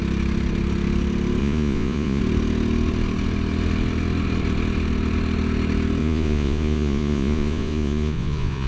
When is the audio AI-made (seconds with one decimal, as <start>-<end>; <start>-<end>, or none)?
1.4-2.2; 6.0-8.7